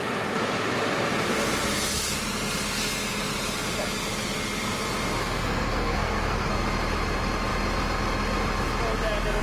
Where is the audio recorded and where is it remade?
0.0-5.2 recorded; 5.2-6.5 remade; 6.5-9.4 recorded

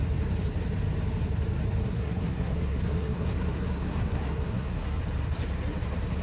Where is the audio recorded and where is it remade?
0.0-1.8 recorded; 1.8-5.0 remade; 5.0-6.2 recorded